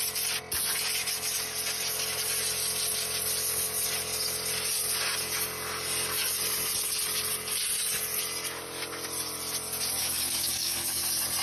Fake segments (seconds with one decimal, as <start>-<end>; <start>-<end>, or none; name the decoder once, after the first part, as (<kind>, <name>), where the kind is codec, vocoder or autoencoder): 10.0-11.0 (codec, DAC)